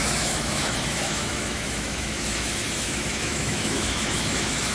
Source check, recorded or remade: remade